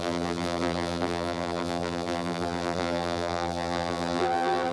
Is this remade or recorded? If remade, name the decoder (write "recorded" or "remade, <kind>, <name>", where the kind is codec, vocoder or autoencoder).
remade, vocoder, BigVGAN v2